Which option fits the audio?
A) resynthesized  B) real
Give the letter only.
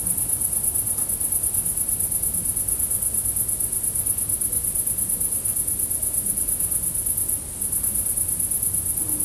B